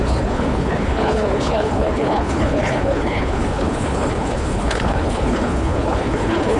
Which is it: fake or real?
fake